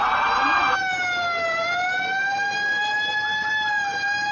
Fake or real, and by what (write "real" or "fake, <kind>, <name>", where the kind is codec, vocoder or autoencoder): real